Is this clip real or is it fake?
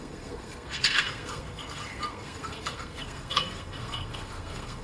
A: fake